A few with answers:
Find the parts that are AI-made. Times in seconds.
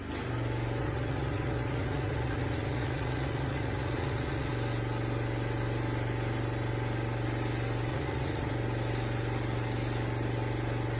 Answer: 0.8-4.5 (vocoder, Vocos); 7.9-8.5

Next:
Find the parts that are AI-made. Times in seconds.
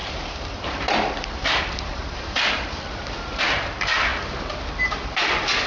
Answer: 0.0-3.4 (vocoder, BigVGAN v2)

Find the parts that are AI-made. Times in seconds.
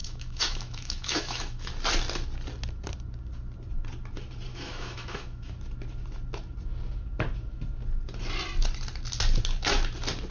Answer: 0.0-1.7 (autoencoder, DAC-VAE); 4.5-5.5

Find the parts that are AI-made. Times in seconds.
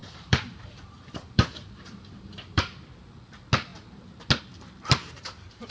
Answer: 0.0-2.6 (vocoder, BigVGAN v2); 5.0-5.7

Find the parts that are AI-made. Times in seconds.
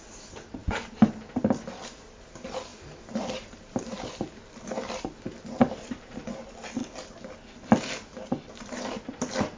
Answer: 2.7-4.0 (vocoder, BigVGAN v2)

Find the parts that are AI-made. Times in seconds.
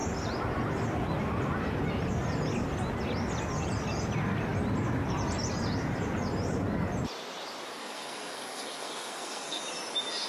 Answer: 7.8-9.6 (codec, SNAC)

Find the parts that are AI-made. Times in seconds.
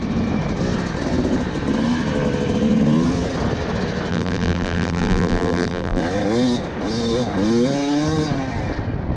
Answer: 4.1-6.0 (vocoder, BigVGAN v2)